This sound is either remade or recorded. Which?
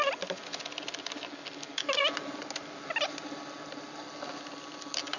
recorded